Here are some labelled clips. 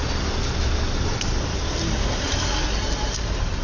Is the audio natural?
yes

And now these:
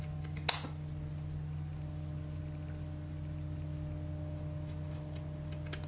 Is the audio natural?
yes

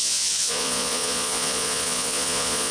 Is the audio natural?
no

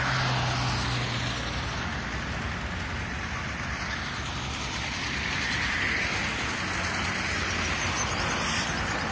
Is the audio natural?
yes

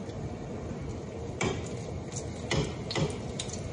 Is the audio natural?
yes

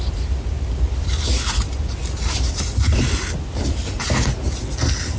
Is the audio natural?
yes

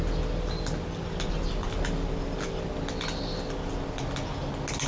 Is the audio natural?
yes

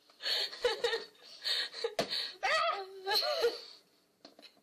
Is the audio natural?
yes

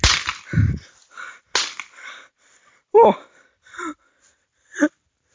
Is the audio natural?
yes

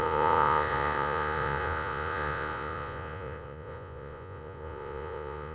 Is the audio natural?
no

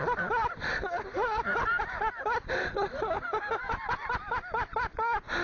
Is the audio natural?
yes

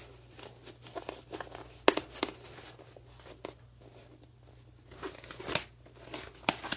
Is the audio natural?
yes